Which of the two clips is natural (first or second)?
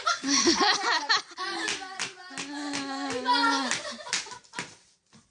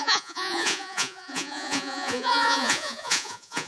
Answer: first